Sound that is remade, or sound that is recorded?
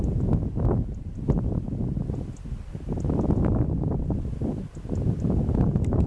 recorded